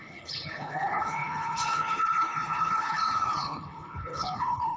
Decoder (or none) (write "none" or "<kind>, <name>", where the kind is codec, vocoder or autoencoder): codec, HILCodec